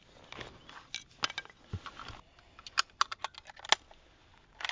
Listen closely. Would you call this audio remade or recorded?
recorded